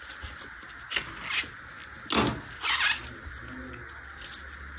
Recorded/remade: recorded